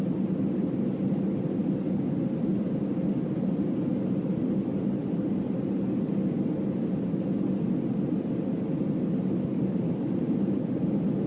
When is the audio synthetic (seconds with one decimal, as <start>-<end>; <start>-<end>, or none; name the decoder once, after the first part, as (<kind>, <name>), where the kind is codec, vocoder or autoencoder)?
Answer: none